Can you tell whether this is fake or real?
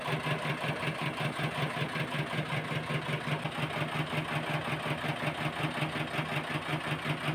real